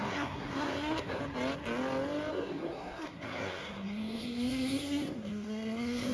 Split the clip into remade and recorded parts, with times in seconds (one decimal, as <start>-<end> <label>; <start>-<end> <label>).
0.0-1.2 remade; 1.2-2.3 recorded; 2.3-6.1 remade